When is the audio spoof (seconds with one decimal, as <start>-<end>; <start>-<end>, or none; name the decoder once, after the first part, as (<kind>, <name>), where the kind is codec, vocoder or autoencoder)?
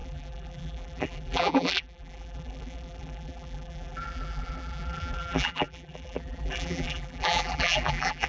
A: 0.0-8.3 (vocoder, BigVGAN v2)